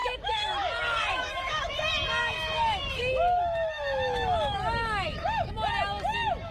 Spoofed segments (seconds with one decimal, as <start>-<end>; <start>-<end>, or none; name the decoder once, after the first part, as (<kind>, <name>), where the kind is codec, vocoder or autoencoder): 0.0-0.7 (autoencoder, DAC-VAE); 1.1-1.8; 2.2-5.5